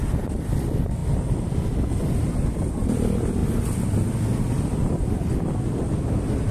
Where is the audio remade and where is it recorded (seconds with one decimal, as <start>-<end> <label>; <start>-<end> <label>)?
0.0-6.5 recorded